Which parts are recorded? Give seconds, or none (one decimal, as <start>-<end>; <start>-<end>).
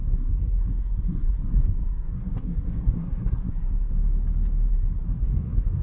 3.9-4.7